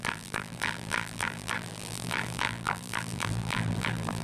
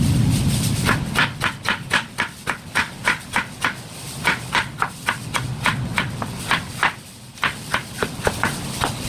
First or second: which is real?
second